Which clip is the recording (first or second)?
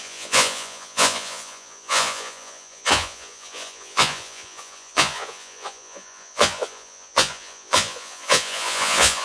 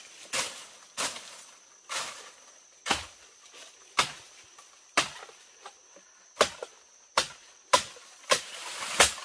second